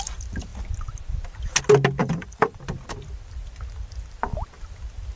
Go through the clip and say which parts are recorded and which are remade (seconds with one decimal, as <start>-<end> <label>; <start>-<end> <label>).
0.0-2.0 recorded; 2.0-2.6 remade; 2.6-5.2 recorded